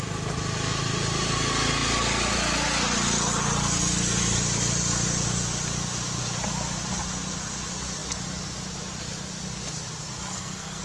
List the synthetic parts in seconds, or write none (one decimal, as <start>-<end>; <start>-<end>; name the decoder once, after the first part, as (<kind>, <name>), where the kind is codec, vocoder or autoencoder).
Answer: 10.3-10.8 (codec, SNAC)